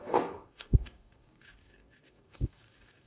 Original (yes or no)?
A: no